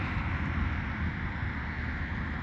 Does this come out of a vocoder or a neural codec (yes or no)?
no